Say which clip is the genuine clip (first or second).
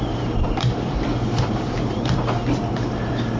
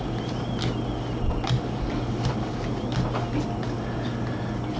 second